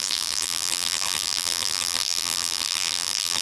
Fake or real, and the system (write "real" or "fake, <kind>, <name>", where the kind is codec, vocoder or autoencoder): fake, vocoder, BigVGAN v2